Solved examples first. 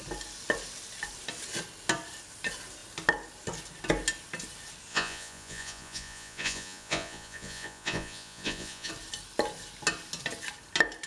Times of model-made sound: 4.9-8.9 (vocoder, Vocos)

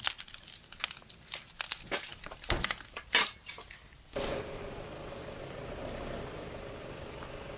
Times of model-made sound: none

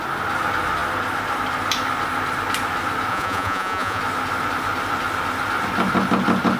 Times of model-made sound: 3.1-4.0 (vocoder, Vocos)

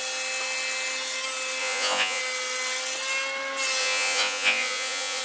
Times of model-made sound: 1.6-2.2 (vocoder, Vocos); 3.8-5.2

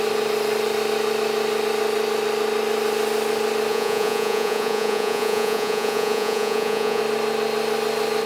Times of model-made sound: 3.7-7.0 (vocoder, Vocos)